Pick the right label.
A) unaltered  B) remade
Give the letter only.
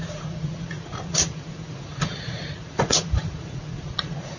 B